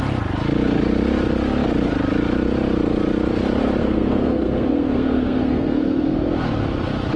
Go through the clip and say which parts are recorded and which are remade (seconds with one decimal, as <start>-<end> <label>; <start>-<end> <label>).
0.0-3.8 recorded; 3.8-6.3 remade; 6.3-7.2 recorded